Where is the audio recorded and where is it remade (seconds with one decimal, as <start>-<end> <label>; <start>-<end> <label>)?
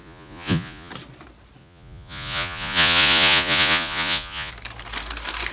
0.0-0.9 remade; 0.9-1.6 recorded; 1.6-4.5 remade; 4.5-5.5 recorded